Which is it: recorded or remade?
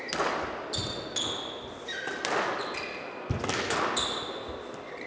recorded